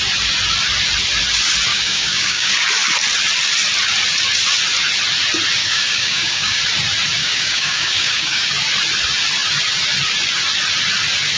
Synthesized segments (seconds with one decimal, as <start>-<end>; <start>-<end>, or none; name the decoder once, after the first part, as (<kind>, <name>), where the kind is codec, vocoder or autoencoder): 1.7-2.5 (codec, DAC); 5.6-6.6; 7.2-8.5